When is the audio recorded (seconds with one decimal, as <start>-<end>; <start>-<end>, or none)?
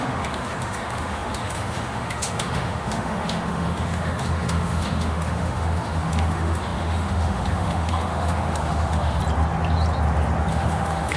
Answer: 9.2-10.5